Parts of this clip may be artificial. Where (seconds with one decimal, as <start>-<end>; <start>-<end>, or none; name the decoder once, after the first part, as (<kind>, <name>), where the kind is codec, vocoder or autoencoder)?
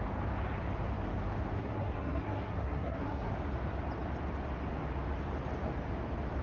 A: 1.6-3.3 (codec, SNAC)